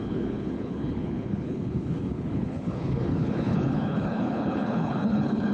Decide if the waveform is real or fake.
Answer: fake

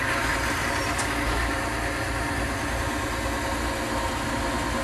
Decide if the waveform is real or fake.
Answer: fake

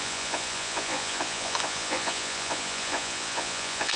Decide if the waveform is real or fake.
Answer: fake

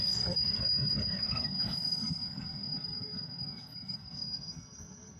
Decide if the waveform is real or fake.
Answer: fake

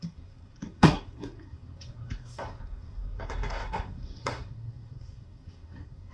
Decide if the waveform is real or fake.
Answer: fake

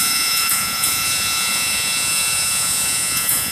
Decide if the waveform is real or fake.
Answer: fake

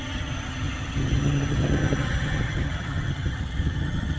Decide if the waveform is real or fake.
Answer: fake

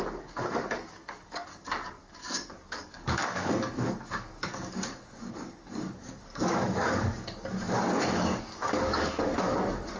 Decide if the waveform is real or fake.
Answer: fake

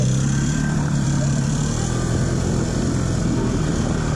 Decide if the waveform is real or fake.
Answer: fake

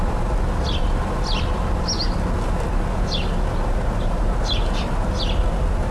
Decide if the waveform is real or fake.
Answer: real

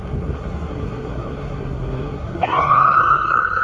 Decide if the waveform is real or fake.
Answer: fake